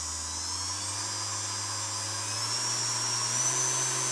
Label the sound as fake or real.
real